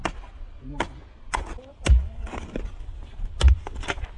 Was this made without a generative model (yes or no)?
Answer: yes